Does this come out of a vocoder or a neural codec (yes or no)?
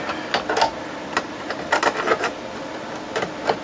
no